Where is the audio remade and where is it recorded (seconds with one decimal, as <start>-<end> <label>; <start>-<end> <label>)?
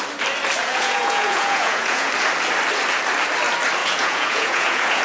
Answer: 0.0-0.7 recorded; 0.7-2.1 remade; 2.1-3.8 recorded; 3.8-5.0 remade